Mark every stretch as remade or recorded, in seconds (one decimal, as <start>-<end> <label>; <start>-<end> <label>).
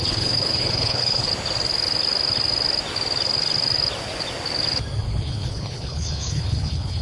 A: 0.0-1.3 remade; 1.3-5.0 recorded; 5.0-7.0 remade